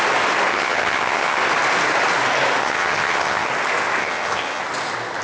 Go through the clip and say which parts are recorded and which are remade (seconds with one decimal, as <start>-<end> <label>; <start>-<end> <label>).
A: 0.0-0.5 recorded; 0.5-1.4 remade; 1.4-2.6 recorded; 2.6-3.5 remade; 3.5-4.0 recorded; 4.0-4.6 remade; 4.6-5.2 recorded